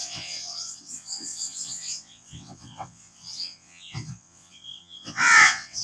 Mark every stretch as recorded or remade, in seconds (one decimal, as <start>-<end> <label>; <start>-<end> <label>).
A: 0.0-5.8 remade